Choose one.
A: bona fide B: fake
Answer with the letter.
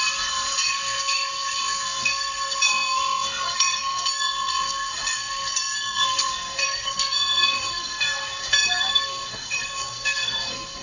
B